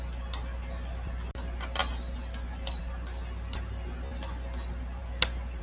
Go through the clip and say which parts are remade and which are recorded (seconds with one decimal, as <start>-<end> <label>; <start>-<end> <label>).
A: 0.0-5.6 recorded

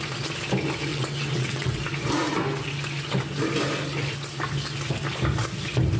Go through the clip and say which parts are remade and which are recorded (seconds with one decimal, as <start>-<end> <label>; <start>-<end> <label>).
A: 0.0-0.9 recorded; 0.9-1.8 remade; 1.8-6.0 recorded

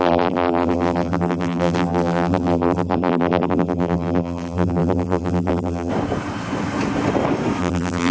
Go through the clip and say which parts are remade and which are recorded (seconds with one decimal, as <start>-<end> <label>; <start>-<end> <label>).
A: 0.0-5.9 remade; 5.9-7.6 recorded; 7.6-8.1 remade

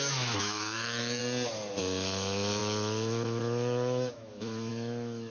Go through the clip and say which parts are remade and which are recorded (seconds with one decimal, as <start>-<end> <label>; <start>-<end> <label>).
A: 0.0-1.2 remade; 1.2-1.8 recorded; 1.8-5.3 remade